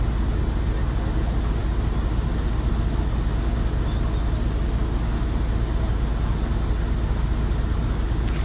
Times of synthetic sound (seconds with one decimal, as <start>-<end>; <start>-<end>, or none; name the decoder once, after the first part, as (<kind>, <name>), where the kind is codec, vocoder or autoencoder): none